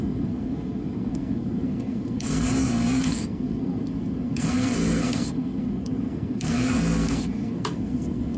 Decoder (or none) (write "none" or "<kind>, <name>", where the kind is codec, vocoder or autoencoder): codec, SNAC